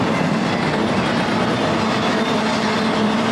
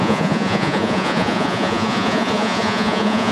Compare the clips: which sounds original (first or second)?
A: first